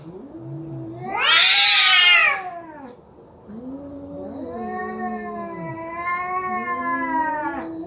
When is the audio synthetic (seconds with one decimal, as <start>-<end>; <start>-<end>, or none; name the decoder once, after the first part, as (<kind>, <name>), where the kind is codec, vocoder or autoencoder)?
none